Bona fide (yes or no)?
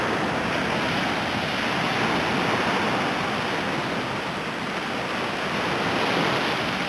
yes